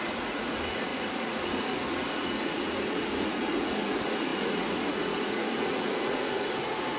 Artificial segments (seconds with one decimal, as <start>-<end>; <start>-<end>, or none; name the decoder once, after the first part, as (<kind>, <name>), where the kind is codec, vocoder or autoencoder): 0.0-7.0 (vocoder, Vocos)